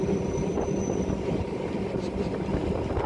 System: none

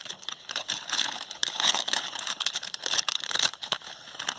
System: codec, HILCodec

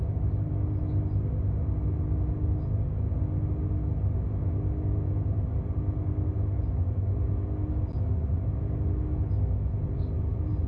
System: none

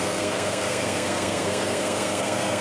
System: codec, SNAC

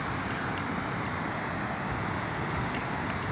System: none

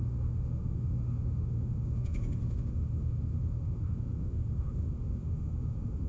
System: autoencoder, DAC-VAE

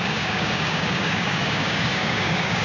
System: codec, DAC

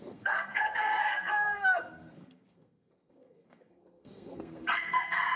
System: codec, SNAC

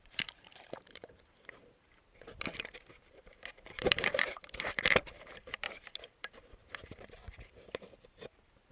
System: vocoder, BigVGAN v2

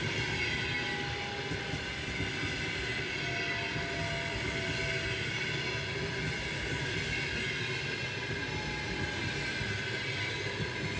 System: none